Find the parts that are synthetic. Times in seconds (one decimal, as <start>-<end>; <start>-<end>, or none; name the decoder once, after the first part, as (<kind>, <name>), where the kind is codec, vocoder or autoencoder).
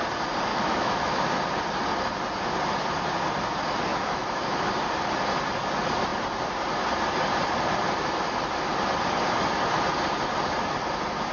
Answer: 0.5-1.2 (autoencoder, DAC-VAE); 3.9-4.7